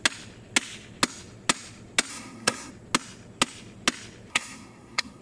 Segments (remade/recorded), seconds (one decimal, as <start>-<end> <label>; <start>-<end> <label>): 0.0-2.1 recorded; 2.1-2.7 remade; 2.7-4.3 recorded; 4.3-5.2 remade